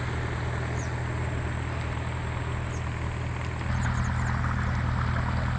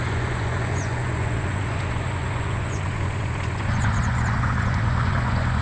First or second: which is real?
first